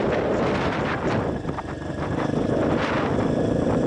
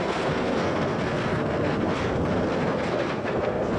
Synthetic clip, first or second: second